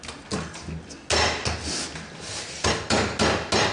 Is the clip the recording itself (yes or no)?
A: yes